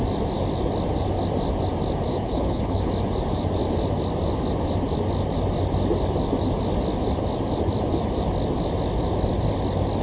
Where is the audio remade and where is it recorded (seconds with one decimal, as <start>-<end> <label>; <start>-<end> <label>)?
0.0-2.1 recorded; 2.1-2.9 remade; 2.9-10.0 recorded